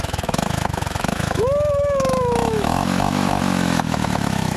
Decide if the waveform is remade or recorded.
remade